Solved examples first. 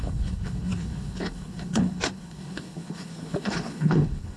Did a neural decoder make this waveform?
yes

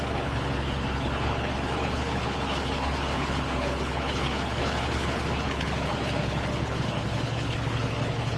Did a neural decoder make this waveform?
yes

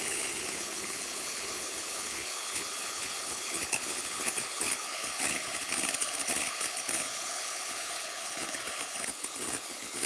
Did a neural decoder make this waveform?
yes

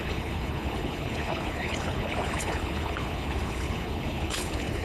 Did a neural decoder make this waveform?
yes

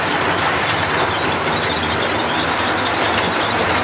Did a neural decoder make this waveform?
no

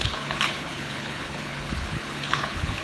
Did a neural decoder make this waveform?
yes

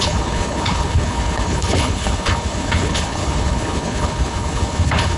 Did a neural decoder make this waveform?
yes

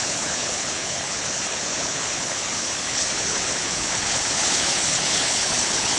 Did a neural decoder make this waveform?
yes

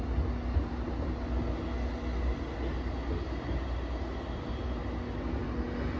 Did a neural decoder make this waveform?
no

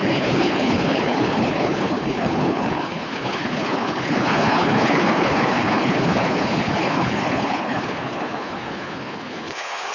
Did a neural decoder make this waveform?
yes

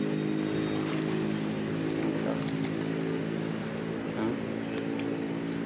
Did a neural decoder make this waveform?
no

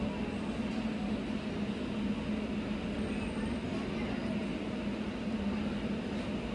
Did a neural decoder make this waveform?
no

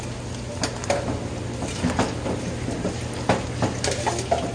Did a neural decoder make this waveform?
no